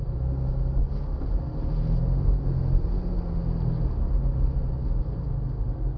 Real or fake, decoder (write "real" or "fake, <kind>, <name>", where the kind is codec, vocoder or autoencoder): real